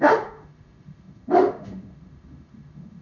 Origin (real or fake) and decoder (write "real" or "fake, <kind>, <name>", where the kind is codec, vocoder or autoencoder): fake, autoencoder, DAC-VAE